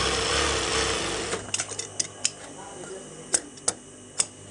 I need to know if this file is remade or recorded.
recorded